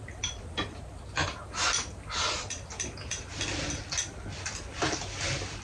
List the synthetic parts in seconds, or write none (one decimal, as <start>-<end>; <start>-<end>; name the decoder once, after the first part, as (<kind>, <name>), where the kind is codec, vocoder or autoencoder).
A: none